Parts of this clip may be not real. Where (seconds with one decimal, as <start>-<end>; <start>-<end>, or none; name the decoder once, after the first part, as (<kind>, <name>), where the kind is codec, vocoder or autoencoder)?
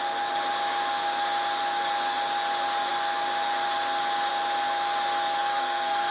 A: 5.4-6.1 (codec, SNAC)